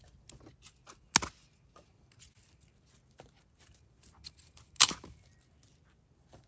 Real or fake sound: real